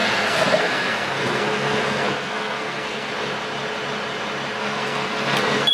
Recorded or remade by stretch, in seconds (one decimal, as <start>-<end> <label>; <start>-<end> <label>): 0.0-3.1 remade; 3.1-4.6 recorded; 4.6-5.7 remade

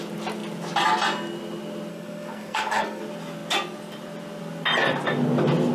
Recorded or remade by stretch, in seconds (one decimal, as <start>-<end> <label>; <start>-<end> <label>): 0.0-1.9 recorded; 1.9-3.0 remade; 3.0-5.7 recorded

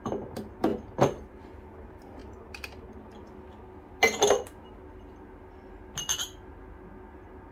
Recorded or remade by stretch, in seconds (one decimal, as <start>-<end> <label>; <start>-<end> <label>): 0.0-7.5 recorded

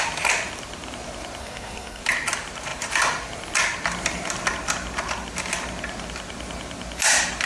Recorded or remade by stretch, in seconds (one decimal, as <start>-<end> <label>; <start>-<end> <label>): 0.0-1.4 recorded; 1.4-2.0 remade; 2.0-7.5 recorded

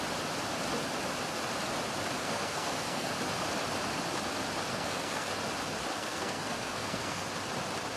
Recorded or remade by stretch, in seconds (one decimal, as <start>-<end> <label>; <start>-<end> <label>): 0.0-2.2 recorded; 2.2-3.1 remade; 3.1-4.7 recorded; 4.7-5.3 remade; 5.3-5.9 recorded; 5.9-7.3 remade; 7.3-8.0 recorded

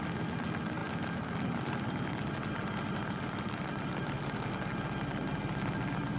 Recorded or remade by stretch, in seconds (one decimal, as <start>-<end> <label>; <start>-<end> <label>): 0.0-6.2 recorded